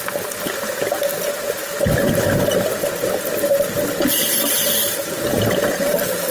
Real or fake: real